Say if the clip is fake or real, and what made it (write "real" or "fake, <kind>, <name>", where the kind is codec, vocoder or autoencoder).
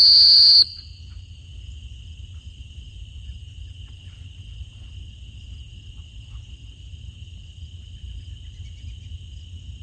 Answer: real